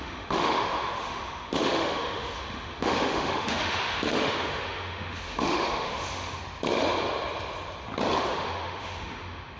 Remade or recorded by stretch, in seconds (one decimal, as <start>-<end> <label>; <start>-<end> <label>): 0.0-6.4 remade; 6.4-8.2 recorded; 8.2-9.6 remade